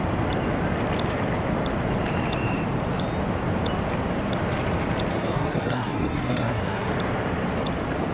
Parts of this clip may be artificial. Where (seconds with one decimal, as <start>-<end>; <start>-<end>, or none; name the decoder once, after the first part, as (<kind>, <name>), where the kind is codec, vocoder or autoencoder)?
5.1-6.9 (codec, SNAC)